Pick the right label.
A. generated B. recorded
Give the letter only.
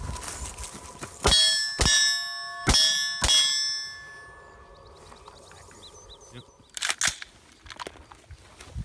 B